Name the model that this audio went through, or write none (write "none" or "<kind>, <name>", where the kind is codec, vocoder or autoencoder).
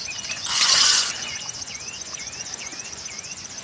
vocoder, Vocos